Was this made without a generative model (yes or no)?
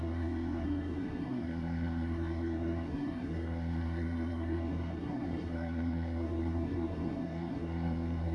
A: no